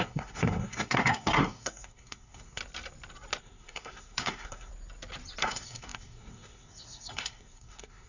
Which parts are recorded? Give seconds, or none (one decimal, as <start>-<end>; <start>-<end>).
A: 2.6-3.4; 4.7-5.4